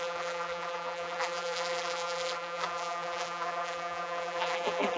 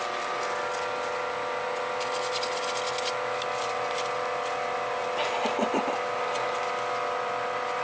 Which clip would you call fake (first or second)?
first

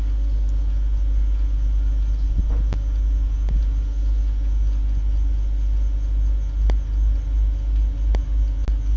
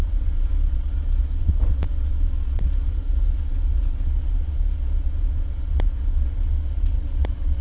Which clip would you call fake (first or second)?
second